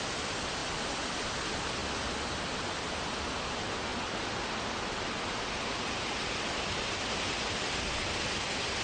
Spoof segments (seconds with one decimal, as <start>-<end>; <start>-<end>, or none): 0.6-1.3